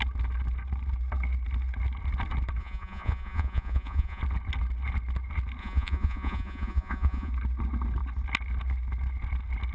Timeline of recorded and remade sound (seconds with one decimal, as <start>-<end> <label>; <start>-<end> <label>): 0.0-2.6 recorded; 2.6-4.2 remade; 4.2-5.6 recorded; 5.6-7.3 remade; 7.3-9.7 recorded